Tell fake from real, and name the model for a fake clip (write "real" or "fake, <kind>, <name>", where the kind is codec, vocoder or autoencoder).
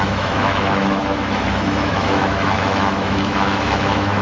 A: fake, autoencoder, DAC-VAE